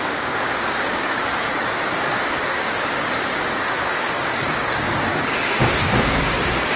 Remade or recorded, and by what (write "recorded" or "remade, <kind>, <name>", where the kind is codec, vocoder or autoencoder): remade, codec, DAC